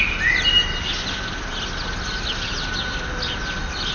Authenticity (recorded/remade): recorded